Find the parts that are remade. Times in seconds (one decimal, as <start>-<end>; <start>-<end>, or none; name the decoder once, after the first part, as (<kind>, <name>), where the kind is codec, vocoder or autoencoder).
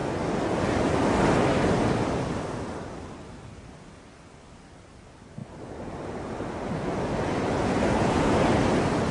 none